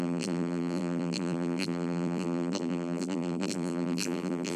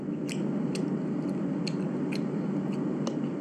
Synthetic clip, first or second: first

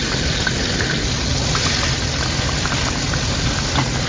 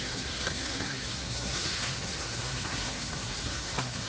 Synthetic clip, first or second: second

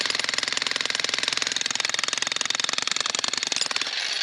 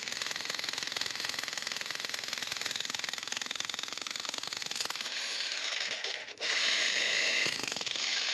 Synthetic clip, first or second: second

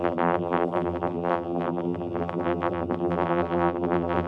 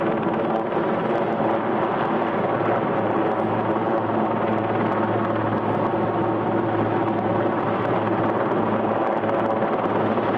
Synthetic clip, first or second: first